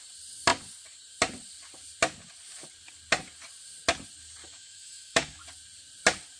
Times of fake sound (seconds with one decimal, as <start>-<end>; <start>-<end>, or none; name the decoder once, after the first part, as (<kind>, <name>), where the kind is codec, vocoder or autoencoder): 4.4-5.4 (autoencoder, DAC-VAE)